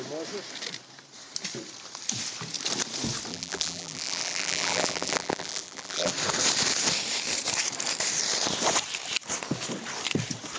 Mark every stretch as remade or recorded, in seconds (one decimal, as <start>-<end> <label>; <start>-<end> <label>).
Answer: 0.0-3.3 recorded; 3.3-6.1 remade; 6.1-10.6 recorded